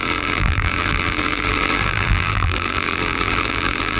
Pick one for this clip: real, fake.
fake